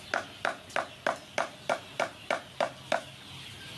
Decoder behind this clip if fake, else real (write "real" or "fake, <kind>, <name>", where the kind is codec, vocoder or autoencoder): real